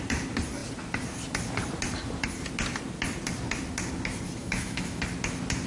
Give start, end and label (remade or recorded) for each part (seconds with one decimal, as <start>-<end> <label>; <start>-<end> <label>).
0.0-4.4 recorded; 4.4-5.0 remade; 5.0-5.7 recorded

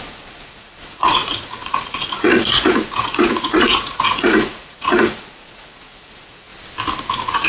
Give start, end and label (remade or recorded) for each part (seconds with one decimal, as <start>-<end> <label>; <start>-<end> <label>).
0.0-6.5 remade; 6.5-7.1 recorded; 7.1-7.5 remade

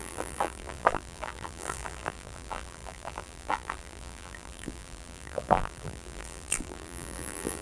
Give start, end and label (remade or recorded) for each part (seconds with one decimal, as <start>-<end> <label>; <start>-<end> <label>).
0.0-7.6 remade

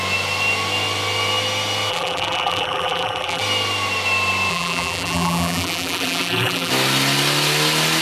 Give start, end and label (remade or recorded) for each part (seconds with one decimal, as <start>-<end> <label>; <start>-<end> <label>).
0.0-1.9 recorded; 1.9-3.4 remade; 3.4-4.5 recorded; 4.5-6.7 remade; 6.7-8.0 recorded

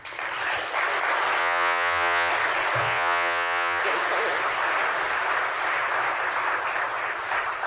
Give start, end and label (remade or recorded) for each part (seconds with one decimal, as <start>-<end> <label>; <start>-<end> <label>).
0.0-1.4 recorded; 1.4-2.3 remade; 2.3-2.8 recorded; 2.8-3.8 remade; 3.8-7.7 recorded

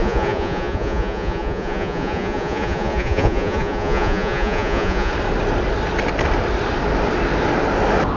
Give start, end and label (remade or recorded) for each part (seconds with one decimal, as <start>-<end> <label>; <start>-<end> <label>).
0.0-5.1 remade; 5.1-8.2 recorded